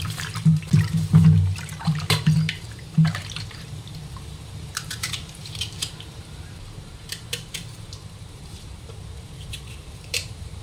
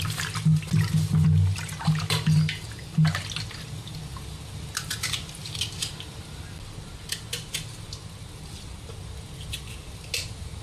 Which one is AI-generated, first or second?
first